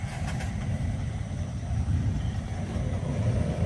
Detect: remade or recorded remade